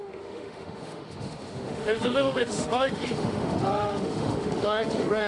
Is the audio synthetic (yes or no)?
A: yes